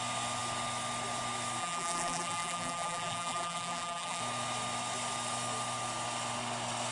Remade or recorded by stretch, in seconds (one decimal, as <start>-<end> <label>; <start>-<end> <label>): 0.0-1.6 recorded; 1.6-4.2 remade; 4.2-6.9 recorded